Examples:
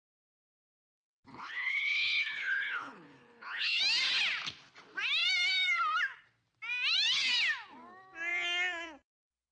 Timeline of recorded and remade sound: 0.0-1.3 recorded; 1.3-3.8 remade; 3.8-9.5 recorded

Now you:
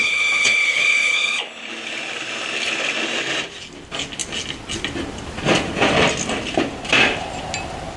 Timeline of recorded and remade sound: 0.0-1.7 remade; 1.7-8.0 recorded